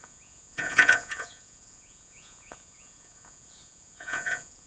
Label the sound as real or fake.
fake